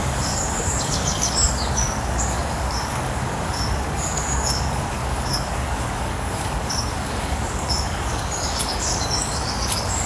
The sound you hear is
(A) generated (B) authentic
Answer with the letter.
A